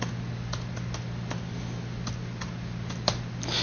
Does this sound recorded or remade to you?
recorded